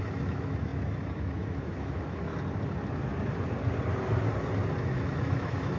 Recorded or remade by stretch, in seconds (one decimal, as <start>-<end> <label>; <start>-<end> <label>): 0.0-2.3 remade; 2.3-4.8 recorded; 4.8-5.8 remade